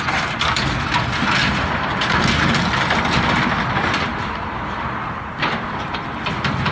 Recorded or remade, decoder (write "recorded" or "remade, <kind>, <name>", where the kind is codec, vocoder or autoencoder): recorded